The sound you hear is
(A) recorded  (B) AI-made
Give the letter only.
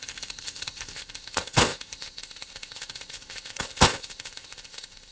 B